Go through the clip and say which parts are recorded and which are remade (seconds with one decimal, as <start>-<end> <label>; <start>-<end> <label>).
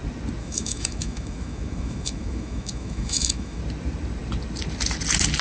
0.0-0.4 recorded; 0.4-3.6 remade; 3.6-5.4 recorded